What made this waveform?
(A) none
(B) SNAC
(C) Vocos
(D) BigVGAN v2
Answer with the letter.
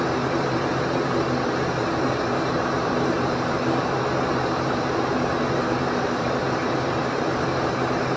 D